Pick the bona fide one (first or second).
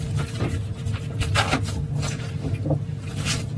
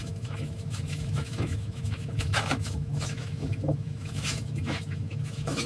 first